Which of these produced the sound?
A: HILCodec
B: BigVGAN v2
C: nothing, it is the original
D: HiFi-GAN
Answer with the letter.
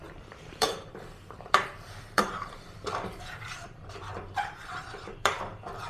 B